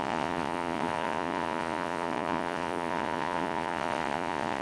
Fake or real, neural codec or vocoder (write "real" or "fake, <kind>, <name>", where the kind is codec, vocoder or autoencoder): fake, vocoder, Vocos